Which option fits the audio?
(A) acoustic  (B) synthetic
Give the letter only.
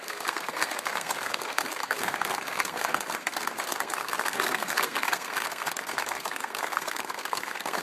B